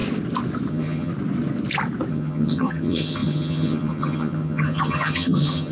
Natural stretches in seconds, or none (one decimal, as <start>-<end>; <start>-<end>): 0.0-0.7; 1.1-2.1